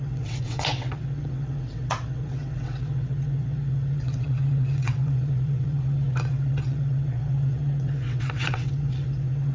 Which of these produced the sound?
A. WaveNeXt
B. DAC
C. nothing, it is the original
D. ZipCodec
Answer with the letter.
A